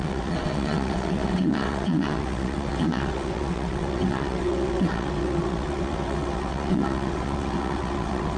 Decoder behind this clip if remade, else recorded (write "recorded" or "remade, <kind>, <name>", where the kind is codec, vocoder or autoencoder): remade, vocoder, WaveNeXt